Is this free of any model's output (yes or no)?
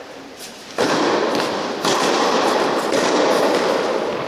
no